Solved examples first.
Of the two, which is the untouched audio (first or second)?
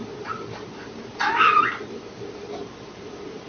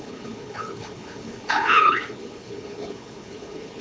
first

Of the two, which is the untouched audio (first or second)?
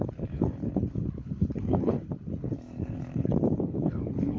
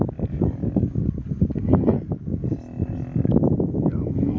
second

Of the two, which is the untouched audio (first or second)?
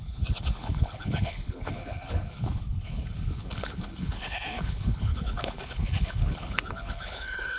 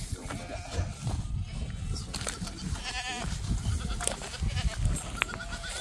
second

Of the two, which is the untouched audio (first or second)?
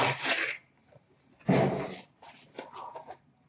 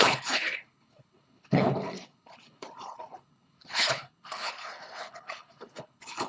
first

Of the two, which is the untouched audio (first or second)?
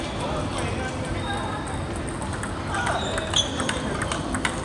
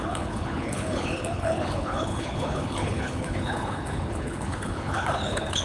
first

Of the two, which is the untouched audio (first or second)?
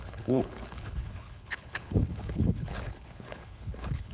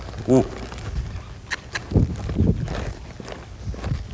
second